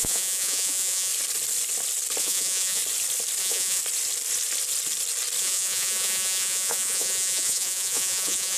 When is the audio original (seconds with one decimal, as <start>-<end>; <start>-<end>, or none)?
1.1-2.2; 2.8-3.4; 3.8-5.4